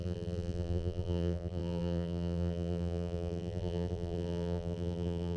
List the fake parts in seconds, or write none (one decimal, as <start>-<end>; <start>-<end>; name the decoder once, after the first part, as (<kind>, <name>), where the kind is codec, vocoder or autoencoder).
0.0-5.4 (vocoder, BigVGAN v2)